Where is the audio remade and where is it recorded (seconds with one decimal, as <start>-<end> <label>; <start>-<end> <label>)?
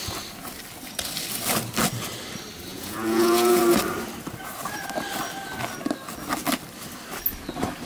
0.0-2.7 recorded; 2.7-3.6 remade; 3.6-7.9 recorded